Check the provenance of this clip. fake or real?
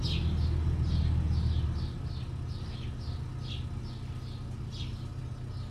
real